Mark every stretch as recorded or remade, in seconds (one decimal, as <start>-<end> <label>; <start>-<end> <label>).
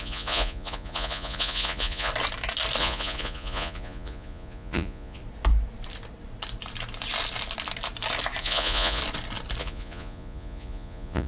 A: 0.0-2.1 remade; 2.1-2.8 recorded; 2.8-5.2 remade; 5.2-8.4 recorded; 8.4-9.0 remade; 9.0-9.6 recorded; 9.6-11.3 remade